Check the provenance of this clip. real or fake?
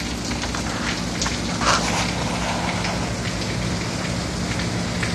real